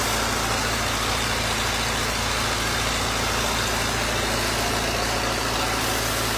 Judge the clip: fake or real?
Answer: real